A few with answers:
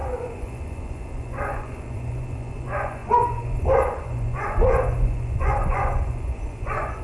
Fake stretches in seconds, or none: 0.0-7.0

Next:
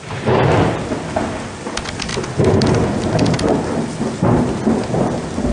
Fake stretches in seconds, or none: none

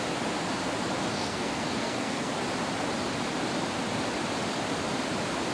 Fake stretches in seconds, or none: 1.1-2.3

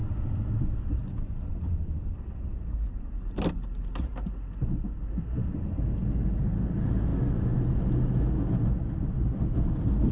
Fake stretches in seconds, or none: none

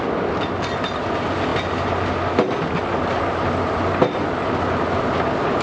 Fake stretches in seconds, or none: none

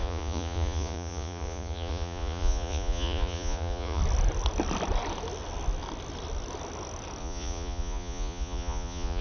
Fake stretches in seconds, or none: 0.0-4.0; 7.2-9.2